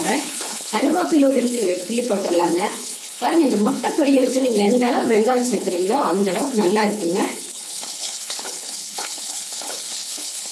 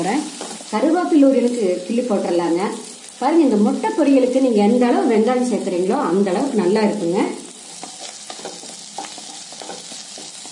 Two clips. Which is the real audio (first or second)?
second